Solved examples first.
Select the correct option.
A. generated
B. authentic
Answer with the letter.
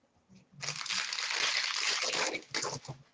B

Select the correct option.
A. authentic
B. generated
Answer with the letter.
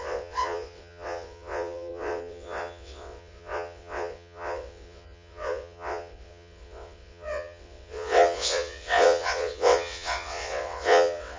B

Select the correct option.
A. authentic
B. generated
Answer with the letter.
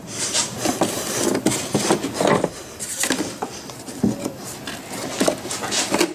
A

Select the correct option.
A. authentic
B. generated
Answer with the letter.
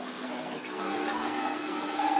B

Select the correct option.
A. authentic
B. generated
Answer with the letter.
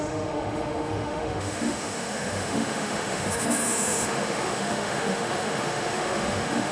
B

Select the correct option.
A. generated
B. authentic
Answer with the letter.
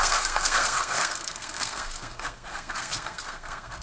A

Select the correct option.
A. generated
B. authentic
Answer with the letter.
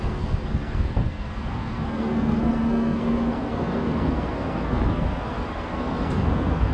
A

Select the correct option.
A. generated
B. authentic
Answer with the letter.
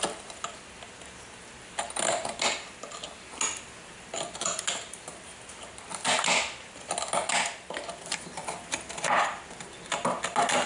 B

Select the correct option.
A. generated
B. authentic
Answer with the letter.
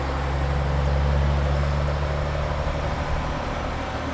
B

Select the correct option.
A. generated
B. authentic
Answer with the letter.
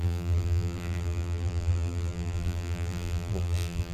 A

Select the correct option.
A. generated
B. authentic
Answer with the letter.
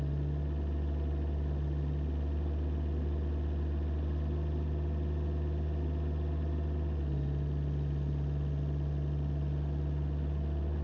B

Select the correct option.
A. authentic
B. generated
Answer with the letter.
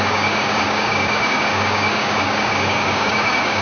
B